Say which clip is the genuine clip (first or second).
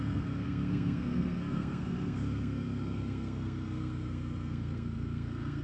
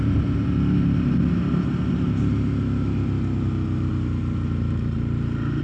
second